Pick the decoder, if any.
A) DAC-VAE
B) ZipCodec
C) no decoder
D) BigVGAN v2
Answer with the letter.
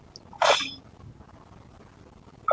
C